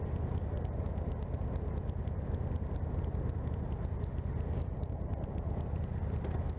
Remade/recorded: recorded